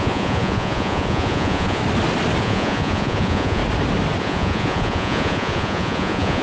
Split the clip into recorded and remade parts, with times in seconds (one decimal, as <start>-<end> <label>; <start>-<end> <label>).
0.0-1.8 remade; 1.8-2.4 recorded; 2.4-3.6 remade; 3.6-4.2 recorded; 4.2-6.4 remade